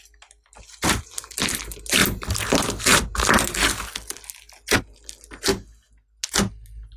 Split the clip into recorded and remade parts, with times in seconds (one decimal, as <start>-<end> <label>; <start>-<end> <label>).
0.0-7.0 recorded